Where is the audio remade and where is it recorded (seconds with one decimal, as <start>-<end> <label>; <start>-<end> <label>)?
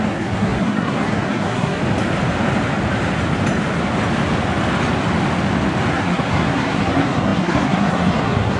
0.0-1.8 remade; 1.8-5.9 recorded; 5.9-8.6 remade